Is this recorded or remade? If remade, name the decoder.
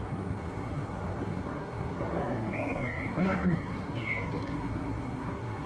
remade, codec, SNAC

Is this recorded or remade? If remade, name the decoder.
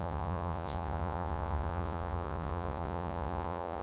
remade, vocoder, Vocos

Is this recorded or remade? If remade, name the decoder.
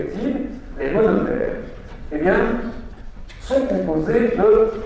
remade, vocoder, WaveNeXt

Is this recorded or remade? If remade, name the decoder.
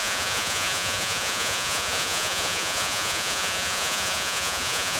remade, vocoder, Vocos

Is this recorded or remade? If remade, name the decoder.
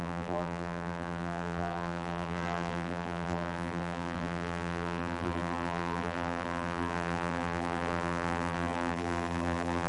remade, vocoder, BigVGAN v2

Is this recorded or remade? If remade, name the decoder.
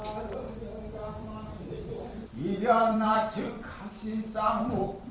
remade, vocoder, BigVGAN v2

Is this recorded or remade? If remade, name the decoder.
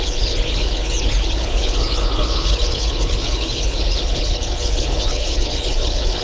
remade, codec, HILCodec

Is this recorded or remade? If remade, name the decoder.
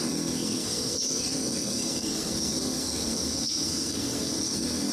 remade, codec, SNAC